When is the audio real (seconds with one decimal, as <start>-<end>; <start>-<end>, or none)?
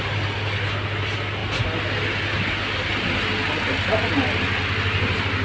0.0-5.4